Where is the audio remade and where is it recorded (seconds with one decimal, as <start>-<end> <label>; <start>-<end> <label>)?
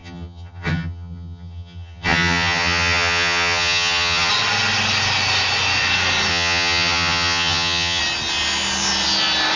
0.0-4.3 remade; 4.3-6.3 recorded; 6.3-8.0 remade; 8.0-9.6 recorded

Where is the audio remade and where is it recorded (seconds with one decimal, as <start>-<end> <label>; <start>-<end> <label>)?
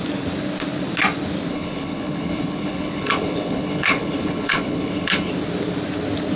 0.0-1.5 recorded; 1.5-5.3 remade; 5.3-6.3 recorded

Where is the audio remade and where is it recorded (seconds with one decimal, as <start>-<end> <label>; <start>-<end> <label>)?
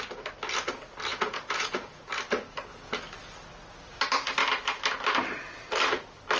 0.0-1.1 recorded; 1.1-2.1 remade; 2.1-6.4 recorded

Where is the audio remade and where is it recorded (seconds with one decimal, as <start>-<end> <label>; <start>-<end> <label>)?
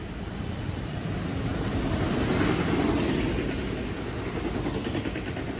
0.0-1.1 remade; 1.1-5.6 recorded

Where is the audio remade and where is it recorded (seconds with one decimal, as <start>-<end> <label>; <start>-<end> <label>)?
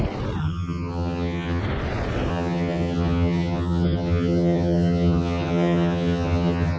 0.0-0.4 recorded; 0.4-1.6 remade; 1.6-2.3 recorded; 2.3-6.8 remade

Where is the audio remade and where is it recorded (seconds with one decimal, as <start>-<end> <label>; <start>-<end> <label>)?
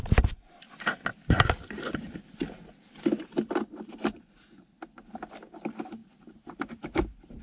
0.0-6.0 recorded; 6.0-7.4 remade